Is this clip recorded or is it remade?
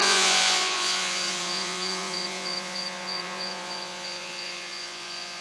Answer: remade